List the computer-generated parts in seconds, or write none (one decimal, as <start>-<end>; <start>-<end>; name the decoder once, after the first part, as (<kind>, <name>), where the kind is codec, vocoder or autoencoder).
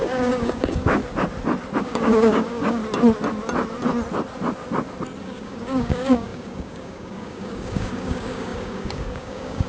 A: 0.0-1.0 (codec, DAC); 1.8-2.8; 5.2-9.7